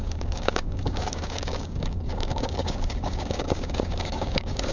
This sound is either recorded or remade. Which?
remade